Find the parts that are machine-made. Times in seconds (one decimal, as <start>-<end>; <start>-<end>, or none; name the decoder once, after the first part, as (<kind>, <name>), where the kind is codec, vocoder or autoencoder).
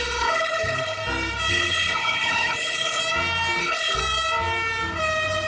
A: 0.0-1.0 (codec, HILCodec); 1.5-3.0; 3.6-4.0